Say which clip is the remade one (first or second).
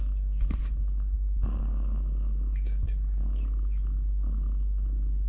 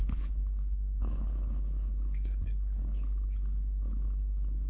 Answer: second